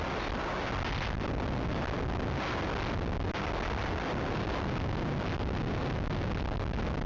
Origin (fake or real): real